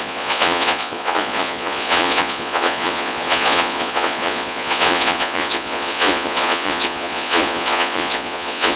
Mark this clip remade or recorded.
remade